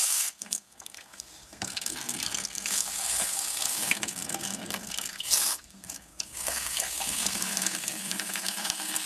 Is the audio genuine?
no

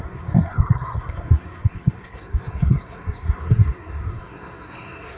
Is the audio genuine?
no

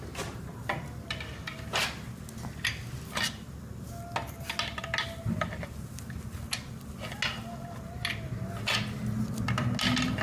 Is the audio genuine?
yes